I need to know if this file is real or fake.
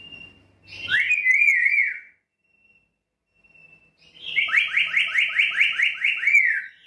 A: real